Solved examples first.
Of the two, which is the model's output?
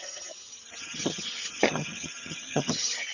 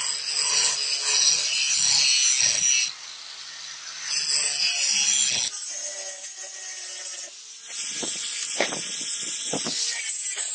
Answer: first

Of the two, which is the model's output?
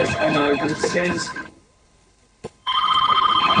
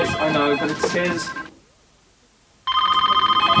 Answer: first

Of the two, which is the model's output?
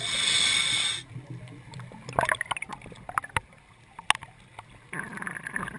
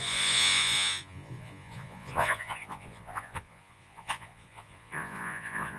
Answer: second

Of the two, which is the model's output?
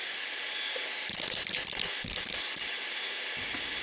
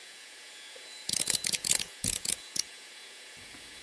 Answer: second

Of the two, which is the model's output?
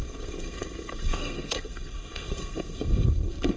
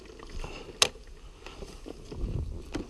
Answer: first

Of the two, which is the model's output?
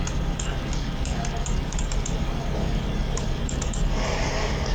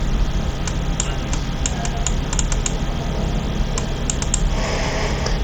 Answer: first